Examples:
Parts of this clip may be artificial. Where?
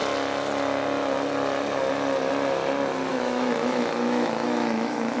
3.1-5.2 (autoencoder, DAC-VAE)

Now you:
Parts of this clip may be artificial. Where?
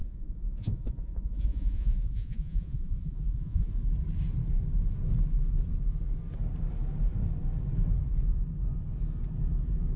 0.0-3.7 (vocoder, Vocos)